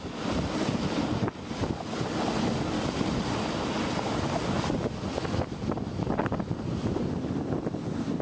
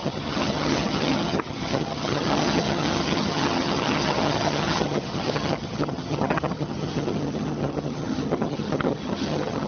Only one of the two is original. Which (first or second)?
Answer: first